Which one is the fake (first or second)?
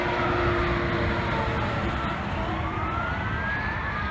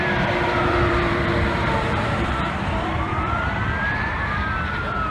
second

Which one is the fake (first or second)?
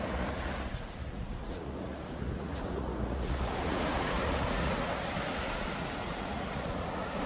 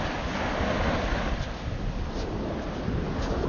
first